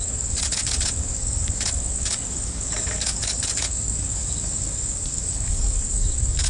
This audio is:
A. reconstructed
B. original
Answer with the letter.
A